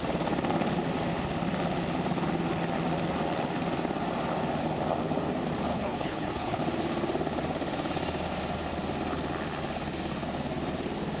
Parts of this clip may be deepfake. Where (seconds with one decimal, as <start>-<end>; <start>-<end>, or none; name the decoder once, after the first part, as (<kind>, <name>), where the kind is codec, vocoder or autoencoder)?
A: 5.7-6.6 (codec, HILCodec)